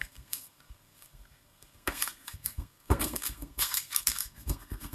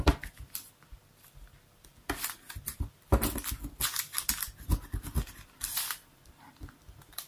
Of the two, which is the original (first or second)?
second